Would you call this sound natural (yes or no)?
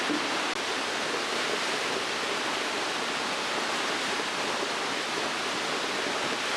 yes